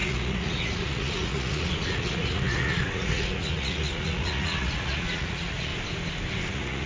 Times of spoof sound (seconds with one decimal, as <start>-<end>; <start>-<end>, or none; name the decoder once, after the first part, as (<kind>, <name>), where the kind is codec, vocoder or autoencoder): 0.0-5.7 (vocoder, Vocos); 6.5-6.9